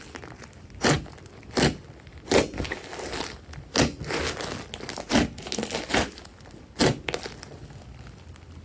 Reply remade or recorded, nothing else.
recorded